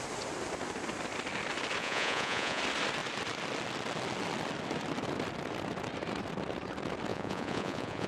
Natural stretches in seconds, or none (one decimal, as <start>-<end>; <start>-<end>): 0.0-1.8; 2.6-7.1